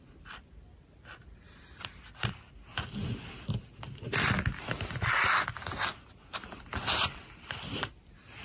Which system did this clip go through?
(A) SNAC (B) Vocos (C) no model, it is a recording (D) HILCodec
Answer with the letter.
C